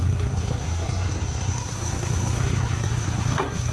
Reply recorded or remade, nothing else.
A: remade